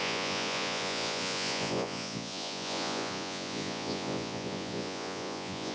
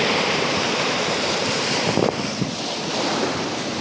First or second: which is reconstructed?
first